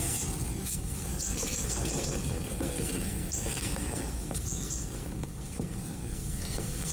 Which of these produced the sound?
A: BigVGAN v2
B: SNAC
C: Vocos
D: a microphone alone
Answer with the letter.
B